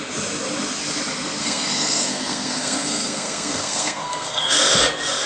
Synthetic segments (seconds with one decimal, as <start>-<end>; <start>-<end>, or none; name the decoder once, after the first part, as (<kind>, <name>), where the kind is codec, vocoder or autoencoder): 1.4-4.6 (codec, SNAC)